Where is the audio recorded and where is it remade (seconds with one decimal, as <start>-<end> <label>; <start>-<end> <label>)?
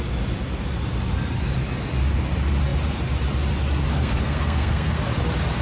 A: 0.0-3.9 recorded; 3.9-5.0 remade; 5.0-5.6 recorded